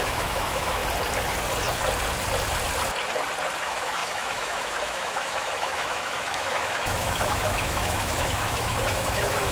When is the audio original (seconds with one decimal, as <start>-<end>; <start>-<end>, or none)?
0.8-3.6